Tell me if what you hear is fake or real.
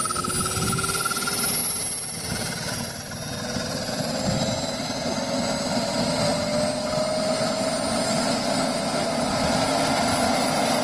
real